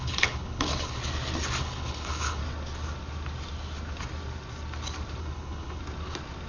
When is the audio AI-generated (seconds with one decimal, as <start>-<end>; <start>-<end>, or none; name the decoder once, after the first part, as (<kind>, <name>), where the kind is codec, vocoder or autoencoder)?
0.0-1.0 (codec, HILCodec); 1.6-2.4; 5.2-5.8

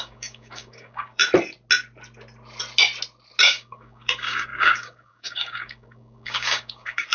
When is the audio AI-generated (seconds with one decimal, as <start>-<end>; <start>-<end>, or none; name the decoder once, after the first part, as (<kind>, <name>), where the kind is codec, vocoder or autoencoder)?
0.0-1.2 (codec, DAC); 3.4-7.1

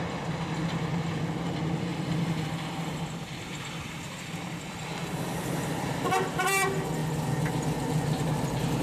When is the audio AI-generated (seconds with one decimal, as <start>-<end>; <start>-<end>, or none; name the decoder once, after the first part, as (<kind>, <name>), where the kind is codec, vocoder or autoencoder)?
1.9-5.9 (vocoder, BigVGAN v2)

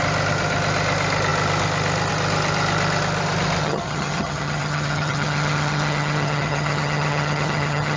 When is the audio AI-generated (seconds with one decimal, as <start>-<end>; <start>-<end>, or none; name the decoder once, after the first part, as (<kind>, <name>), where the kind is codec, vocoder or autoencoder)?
3.6-8.0 (vocoder, HiFi-GAN)

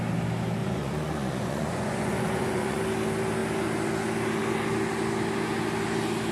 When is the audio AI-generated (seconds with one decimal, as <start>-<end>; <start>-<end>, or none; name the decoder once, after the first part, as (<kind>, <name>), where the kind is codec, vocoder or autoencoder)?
0.6-2.8 (vocoder, Vocos)

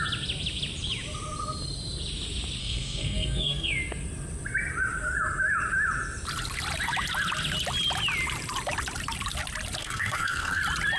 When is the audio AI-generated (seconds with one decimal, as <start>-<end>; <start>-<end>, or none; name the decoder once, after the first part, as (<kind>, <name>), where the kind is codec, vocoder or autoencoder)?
2.6-3.7 (codec, SNAC); 9.8-10.6